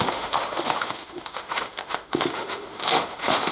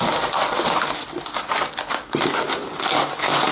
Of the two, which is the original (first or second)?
second